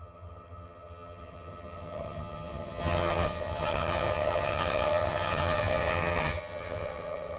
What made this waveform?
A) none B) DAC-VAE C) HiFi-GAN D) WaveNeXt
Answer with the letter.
C